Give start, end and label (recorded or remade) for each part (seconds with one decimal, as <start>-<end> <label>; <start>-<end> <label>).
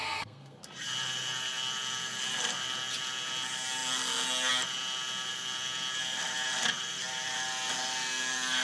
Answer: 0.0-0.6 remade; 0.6-8.6 recorded